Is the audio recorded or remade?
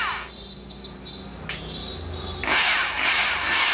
recorded